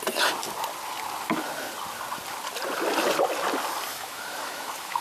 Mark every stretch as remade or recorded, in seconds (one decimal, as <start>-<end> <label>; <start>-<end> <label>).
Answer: 0.0-3.9 recorded; 3.9-5.0 remade